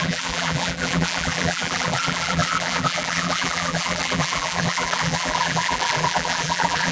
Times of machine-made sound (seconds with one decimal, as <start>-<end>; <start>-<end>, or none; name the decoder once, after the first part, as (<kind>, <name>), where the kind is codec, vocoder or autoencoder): 0.0-6.9 (vocoder, BigVGAN v2)